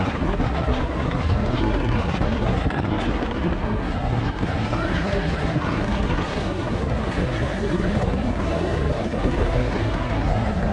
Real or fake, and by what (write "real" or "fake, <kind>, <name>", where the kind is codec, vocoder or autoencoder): fake, codec, SNAC